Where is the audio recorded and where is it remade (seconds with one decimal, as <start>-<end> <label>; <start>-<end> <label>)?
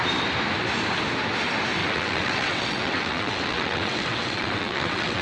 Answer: 0.0-1.8 recorded; 1.8-5.2 remade